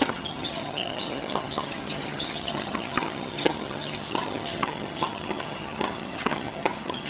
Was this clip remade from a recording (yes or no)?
yes